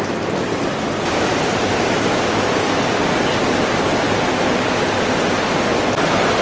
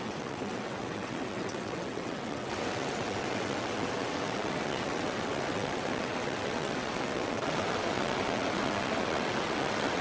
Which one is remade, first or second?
second